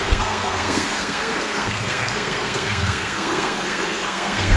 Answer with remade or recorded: remade